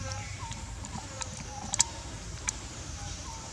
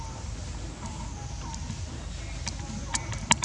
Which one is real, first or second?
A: second